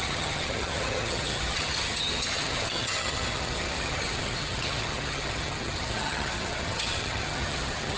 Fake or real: fake